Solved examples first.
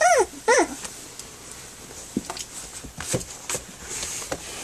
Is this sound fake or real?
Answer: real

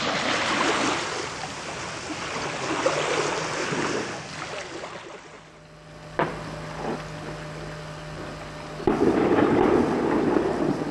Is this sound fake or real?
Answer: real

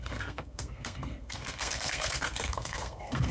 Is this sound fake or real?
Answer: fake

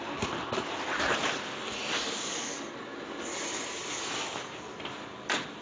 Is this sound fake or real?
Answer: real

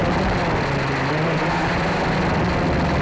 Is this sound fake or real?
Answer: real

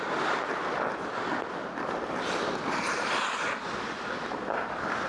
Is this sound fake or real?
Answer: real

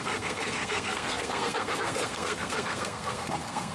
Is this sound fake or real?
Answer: fake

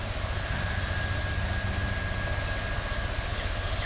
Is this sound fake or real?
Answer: real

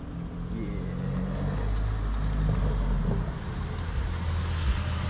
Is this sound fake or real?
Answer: real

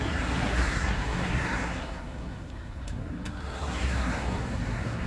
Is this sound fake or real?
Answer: fake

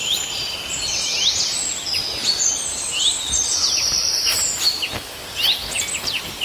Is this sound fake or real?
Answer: real